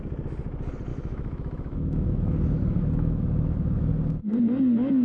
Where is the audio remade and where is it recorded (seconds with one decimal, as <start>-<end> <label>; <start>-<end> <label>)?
0.0-0.9 recorded; 0.9-3.9 remade; 3.9-5.0 recorded